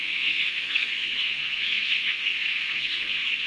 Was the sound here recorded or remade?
remade